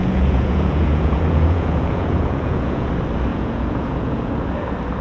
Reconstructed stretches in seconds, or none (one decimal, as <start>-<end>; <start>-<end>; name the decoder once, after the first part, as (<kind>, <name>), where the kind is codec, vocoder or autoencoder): 0.0-2.9 (vocoder, Vocos); 3.3-4.3

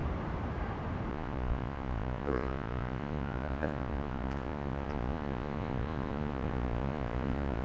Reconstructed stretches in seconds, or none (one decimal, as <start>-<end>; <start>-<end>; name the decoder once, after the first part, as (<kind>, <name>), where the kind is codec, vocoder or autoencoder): 1.1-7.6 (vocoder, Vocos)

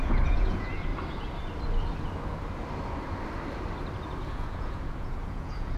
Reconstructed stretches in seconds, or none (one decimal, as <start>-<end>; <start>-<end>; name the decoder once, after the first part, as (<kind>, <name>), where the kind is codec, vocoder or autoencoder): 0.0-0.9 (vocoder, Vocos); 4.3-5.8

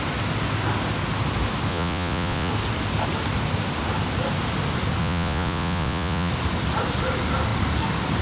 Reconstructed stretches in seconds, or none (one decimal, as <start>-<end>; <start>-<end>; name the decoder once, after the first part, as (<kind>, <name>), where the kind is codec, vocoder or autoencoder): 1.7-2.5 (vocoder, Vocos); 5.0-6.3

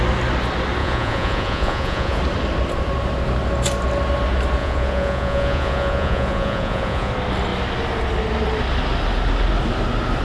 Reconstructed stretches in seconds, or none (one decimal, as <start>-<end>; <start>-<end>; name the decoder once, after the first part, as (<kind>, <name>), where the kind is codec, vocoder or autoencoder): 0.8-2.2 (vocoder, Vocos); 4.6-7.1

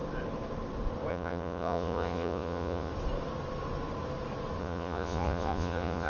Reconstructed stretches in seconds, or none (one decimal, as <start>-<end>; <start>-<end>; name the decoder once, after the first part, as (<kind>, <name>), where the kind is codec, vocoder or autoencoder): 1.1-2.9 (vocoder, Vocos); 4.6-6.1

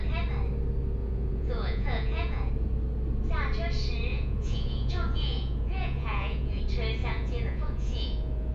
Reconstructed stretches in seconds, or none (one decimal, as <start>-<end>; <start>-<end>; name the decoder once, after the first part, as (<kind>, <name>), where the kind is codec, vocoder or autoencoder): 1.0-2.5 (vocoder, Vocos); 4.1-6.6; 7.0-8.5